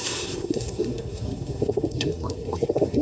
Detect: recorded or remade remade